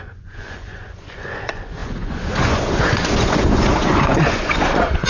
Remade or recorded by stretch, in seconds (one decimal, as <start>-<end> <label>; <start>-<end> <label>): 0.0-5.1 remade